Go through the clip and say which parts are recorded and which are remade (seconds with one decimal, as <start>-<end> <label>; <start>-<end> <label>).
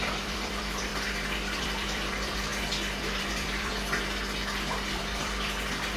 0.0-0.9 remade; 0.9-1.6 recorded; 1.6-2.5 remade; 2.5-3.0 recorded; 3.0-3.7 remade; 3.7-4.9 recorded; 4.9-6.0 remade